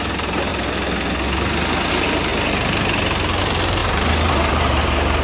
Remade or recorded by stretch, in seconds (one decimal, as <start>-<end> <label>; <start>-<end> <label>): 0.0-0.5 remade; 0.5-1.9 recorded; 1.9-2.3 remade; 2.3-3.4 recorded; 3.4-5.2 remade